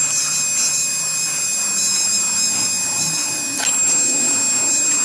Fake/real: real